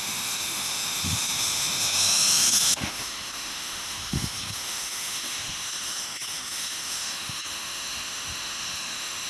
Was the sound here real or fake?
fake